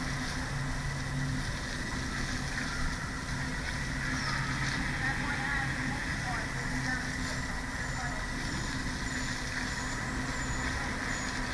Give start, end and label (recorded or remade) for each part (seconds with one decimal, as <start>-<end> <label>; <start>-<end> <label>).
0.0-11.5 recorded